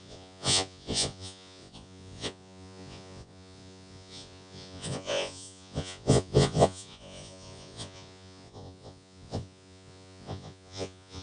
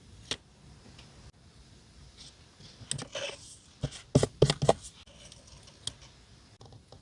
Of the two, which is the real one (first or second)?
second